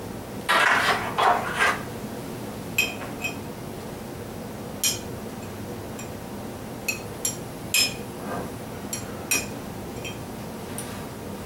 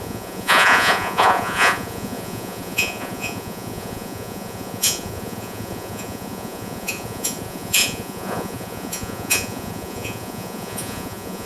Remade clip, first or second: second